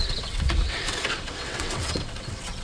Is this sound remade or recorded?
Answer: remade